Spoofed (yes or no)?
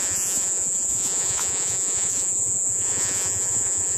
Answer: yes